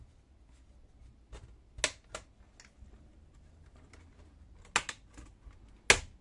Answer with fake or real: real